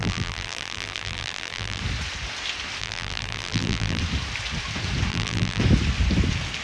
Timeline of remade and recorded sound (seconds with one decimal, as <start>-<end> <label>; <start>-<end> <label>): 0.0-1.8 remade; 1.8-2.8 recorded; 2.8-4.0 remade; 4.0-5.1 recorded; 5.1-5.6 remade; 5.6-6.6 recorded